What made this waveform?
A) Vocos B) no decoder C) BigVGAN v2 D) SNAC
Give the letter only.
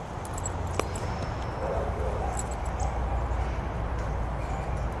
B